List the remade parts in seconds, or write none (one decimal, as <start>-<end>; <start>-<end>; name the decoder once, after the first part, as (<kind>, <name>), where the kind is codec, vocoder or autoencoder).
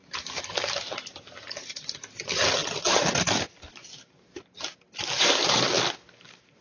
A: none